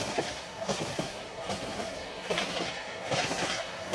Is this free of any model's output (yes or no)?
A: no